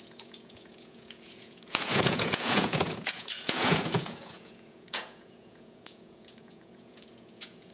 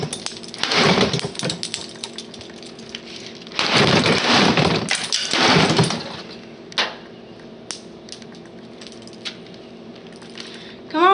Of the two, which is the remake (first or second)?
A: first